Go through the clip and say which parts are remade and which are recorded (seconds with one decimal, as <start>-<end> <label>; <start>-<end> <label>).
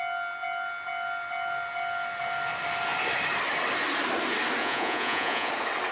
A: 0.0-4.6 recorded; 4.6-5.5 remade; 5.5-5.9 recorded